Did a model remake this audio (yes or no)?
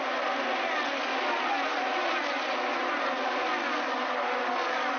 no